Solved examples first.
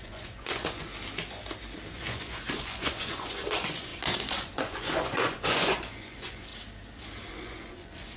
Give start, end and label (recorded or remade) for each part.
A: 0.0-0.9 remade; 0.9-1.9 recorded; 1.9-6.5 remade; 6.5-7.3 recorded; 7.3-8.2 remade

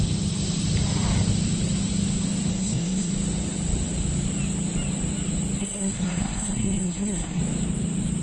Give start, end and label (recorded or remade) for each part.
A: 0.0-2.5 recorded; 2.5-3.1 remade; 3.1-5.6 recorded; 5.6-7.4 remade; 7.4-8.2 recorded

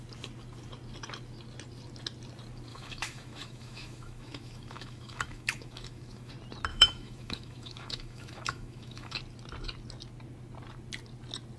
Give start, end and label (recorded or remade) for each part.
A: 0.0-2.7 recorded; 2.7-6.3 remade; 6.3-6.7 recorded; 6.7-9.2 remade; 9.2-11.6 recorded

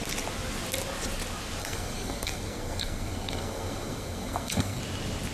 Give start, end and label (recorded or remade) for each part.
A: 0.0-1.6 recorded; 1.6-4.8 remade; 4.8-5.3 recorded

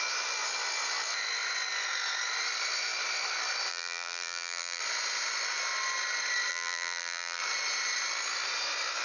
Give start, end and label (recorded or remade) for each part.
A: 0.0-3.7 recorded; 3.7-4.8 remade; 4.8-6.5 recorded; 6.5-7.4 remade; 7.4-9.0 recorded

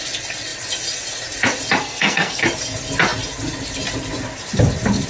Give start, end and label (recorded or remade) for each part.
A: 0.0-1.8 recorded; 1.8-2.4 remade; 2.4-5.1 recorded

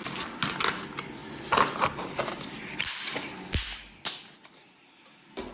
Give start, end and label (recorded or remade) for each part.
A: 0.0-5.5 recorded

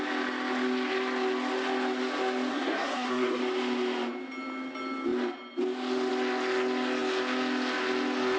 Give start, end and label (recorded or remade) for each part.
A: 0.0-2.5 recorded; 2.5-3.4 remade; 3.4-8.4 recorded